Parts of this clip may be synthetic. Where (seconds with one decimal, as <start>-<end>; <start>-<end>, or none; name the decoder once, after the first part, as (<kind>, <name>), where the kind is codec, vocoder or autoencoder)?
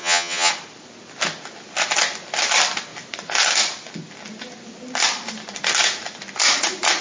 0.0-0.5 (vocoder, HiFi-GAN)